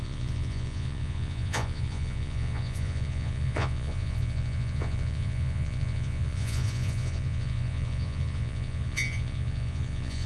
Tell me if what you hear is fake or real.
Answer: fake